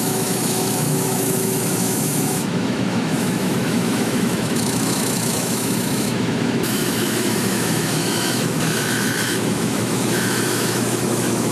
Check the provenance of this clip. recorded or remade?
remade